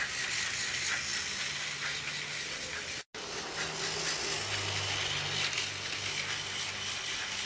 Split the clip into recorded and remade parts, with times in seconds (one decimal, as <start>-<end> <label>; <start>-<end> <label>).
0.0-7.5 recorded